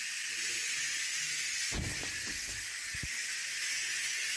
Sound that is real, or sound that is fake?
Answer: real